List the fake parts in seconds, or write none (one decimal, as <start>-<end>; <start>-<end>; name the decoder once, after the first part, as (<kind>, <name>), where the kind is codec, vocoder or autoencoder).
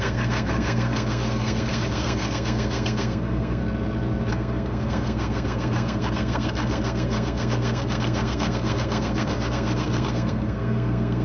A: 0.0-3.6 (codec, SNAC); 4.3-11.2